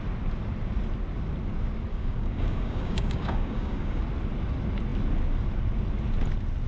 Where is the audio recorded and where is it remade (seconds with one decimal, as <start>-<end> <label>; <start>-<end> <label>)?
0.0-1.9 recorded; 1.9-4.0 remade; 4.0-6.7 recorded